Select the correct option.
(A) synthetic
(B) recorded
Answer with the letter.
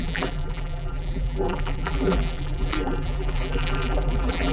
A